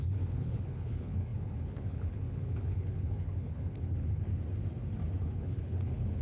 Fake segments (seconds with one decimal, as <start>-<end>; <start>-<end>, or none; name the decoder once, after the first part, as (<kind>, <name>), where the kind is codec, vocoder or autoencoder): 0.0-4.3 (codec, HILCodec); 5.2-6.2